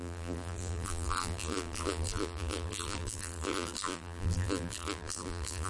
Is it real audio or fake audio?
fake